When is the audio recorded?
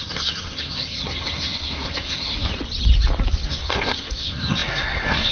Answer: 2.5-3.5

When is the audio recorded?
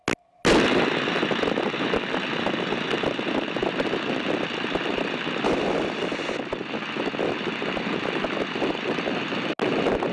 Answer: 0.0-10.1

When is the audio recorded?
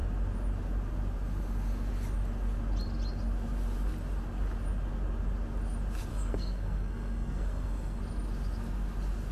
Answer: 0.0-6.1; 8.0-9.3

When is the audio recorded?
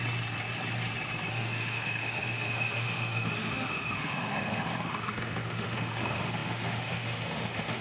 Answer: 0.0-1.3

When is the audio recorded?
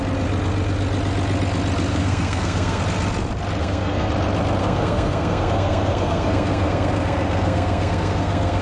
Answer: 0.0-1.9; 2.8-3.6; 4.1-4.6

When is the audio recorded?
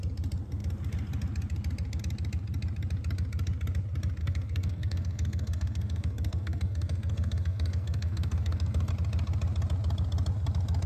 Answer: 0.0-4.2; 8.9-10.9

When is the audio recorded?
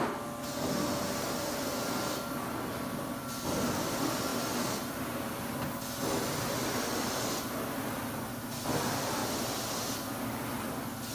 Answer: 0.0-9.2; 10.1-11.1